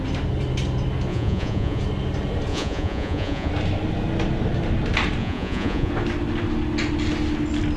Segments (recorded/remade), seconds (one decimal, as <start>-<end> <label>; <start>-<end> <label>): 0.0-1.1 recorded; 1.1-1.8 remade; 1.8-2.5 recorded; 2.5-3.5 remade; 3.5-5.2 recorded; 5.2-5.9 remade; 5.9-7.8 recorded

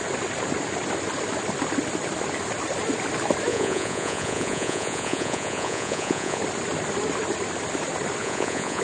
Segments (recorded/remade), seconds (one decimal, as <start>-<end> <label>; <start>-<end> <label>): 0.0-3.5 recorded; 3.5-6.4 remade; 6.4-8.2 recorded; 8.2-8.8 remade

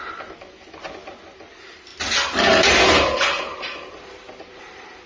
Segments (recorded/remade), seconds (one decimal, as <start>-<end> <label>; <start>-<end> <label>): 0.0-5.1 recorded

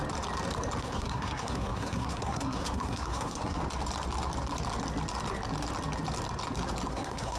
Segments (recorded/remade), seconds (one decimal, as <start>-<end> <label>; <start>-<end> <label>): 0.0-0.8 recorded; 0.8-3.6 remade; 3.6-6.9 recorded; 6.9-7.4 remade

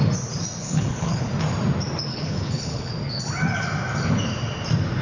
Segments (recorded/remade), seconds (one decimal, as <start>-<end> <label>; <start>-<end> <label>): 0.0-0.6 recorded; 0.6-1.3 remade; 1.3-2.1 recorded; 2.1-2.9 remade; 2.9-5.0 recorded

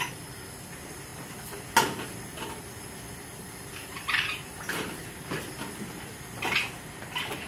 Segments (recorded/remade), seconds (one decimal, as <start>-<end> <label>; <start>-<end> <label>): 0.0-1.1 remade; 1.1-3.5 recorded; 3.5-5.0 remade; 5.0-5.8 recorded; 5.8-7.5 remade